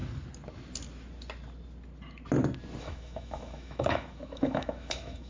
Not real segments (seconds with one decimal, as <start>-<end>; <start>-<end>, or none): 2.8-5.3